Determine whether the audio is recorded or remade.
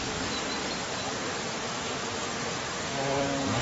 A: recorded